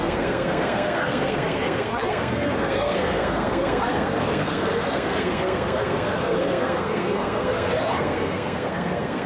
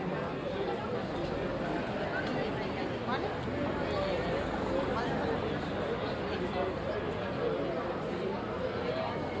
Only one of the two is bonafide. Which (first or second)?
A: second